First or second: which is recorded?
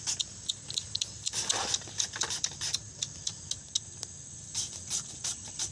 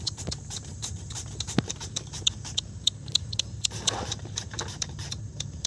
first